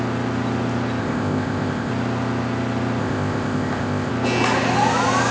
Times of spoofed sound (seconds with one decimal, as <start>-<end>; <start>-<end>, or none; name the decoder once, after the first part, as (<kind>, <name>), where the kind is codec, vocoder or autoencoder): 1.0-1.9 (codec, ZipCodec); 3.0-4.1